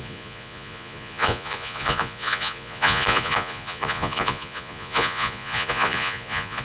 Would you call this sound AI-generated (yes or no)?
yes